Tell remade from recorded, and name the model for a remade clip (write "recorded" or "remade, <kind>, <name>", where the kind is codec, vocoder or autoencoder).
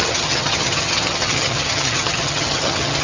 remade, vocoder, HiFi-GAN